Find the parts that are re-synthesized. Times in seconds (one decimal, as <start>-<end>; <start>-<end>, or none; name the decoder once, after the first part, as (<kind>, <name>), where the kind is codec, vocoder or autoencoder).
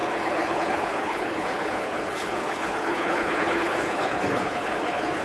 0.0-5.2 (codec, HILCodec)